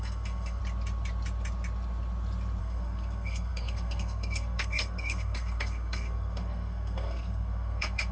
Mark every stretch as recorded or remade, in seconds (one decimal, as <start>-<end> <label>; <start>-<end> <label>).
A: 0.0-0.6 remade; 0.6-2.6 recorded; 2.6-8.1 remade